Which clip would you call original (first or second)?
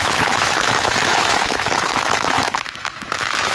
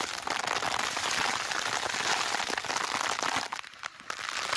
second